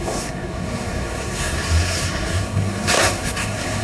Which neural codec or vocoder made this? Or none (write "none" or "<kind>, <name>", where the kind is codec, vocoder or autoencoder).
codec, SNAC